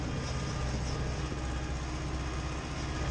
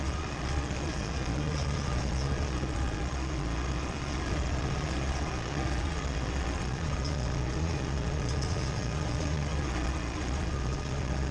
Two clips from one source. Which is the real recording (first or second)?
first